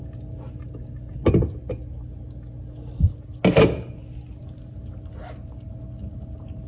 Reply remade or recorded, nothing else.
recorded